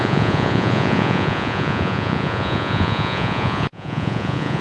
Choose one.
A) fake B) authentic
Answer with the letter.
A